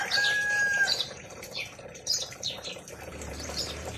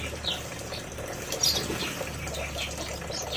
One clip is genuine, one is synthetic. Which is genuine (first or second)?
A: second